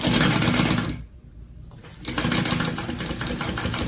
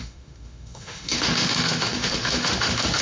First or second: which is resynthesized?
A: second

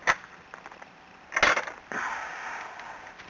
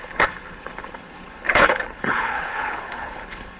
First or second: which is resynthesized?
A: second